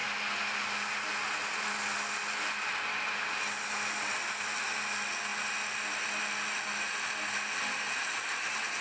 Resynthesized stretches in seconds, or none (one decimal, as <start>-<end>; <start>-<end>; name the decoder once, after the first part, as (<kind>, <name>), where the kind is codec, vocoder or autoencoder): none

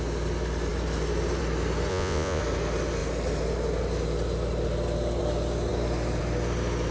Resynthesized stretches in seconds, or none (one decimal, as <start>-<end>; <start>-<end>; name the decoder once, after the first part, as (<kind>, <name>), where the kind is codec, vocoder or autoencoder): 1.9-2.4 (vocoder, Vocos)